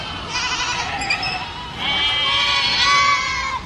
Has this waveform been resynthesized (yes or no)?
no